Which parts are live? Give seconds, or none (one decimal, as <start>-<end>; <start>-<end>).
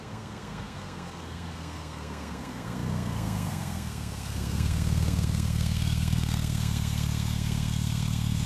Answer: none